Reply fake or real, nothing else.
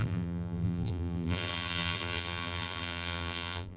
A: fake